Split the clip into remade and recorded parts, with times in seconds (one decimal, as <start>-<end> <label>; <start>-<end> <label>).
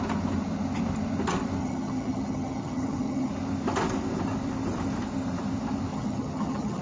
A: 0.0-1.6 recorded; 1.6-3.3 remade; 3.3-5.9 recorded; 5.9-6.8 remade